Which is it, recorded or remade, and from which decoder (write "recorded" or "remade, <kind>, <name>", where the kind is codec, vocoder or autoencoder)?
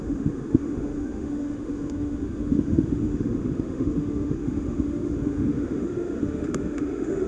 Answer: remade, autoencoder, DAC-VAE